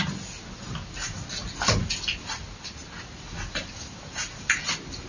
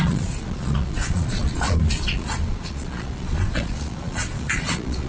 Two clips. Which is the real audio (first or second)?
first